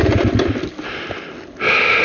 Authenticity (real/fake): real